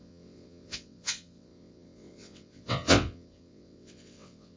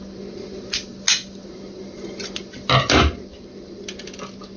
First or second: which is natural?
second